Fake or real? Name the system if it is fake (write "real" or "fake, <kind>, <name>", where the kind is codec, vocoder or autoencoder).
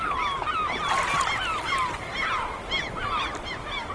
real